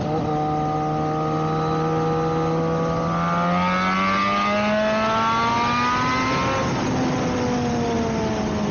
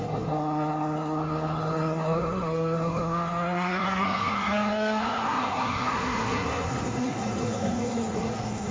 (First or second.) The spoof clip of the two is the second